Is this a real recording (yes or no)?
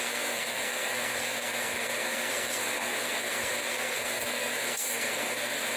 no